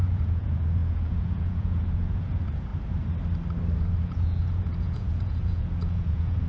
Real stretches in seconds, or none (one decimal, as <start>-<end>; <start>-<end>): 2.7-3.8